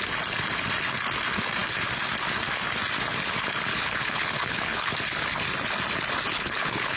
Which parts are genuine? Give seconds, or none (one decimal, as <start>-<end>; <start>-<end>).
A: 0.0-3.7; 4.9-6.3